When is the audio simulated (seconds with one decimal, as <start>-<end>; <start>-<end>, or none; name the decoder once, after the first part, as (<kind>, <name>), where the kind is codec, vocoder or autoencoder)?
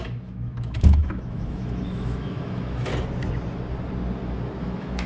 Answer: 0.0-2.9 (autoencoder, DAC-VAE); 4.6-5.1